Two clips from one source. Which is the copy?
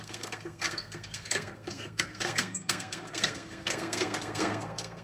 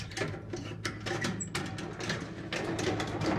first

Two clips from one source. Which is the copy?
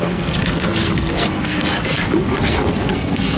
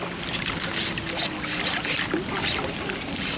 first